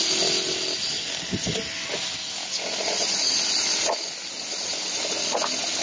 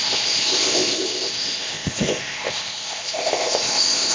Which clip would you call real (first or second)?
first